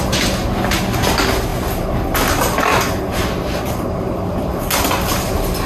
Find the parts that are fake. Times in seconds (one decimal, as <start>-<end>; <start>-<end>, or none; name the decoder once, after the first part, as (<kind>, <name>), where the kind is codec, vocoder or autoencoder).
none